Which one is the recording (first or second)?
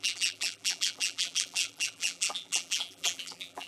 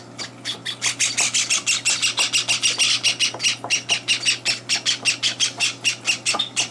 second